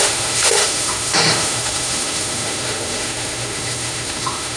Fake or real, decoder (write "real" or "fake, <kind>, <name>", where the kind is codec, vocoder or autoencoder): fake, autoencoder, DAC-VAE